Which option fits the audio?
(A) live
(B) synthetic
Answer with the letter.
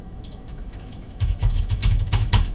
B